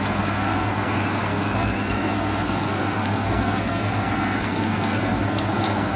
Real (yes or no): no